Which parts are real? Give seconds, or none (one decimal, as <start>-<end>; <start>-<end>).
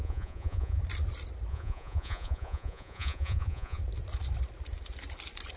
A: 0.8-1.5; 3.8-5.6